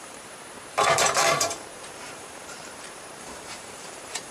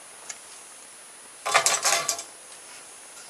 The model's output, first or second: first